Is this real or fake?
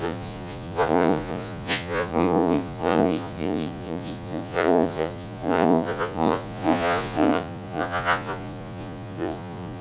fake